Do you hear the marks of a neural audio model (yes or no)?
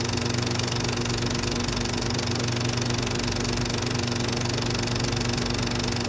no